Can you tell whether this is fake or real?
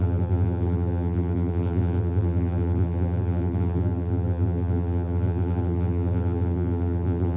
fake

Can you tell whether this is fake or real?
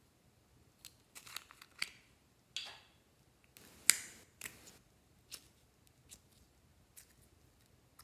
real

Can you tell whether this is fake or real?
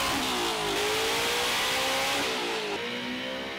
real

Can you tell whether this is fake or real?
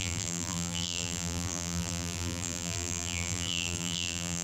fake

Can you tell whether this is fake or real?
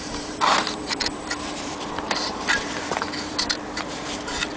fake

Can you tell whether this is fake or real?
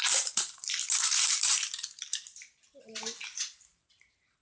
fake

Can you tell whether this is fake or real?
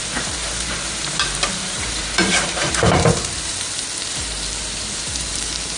fake